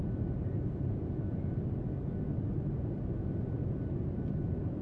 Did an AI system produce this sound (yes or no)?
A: no